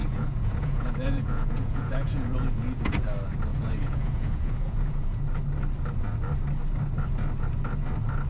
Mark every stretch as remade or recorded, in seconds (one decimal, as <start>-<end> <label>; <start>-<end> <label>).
0.0-3.0 remade; 3.0-3.5 recorded; 3.5-5.2 remade; 5.2-8.3 recorded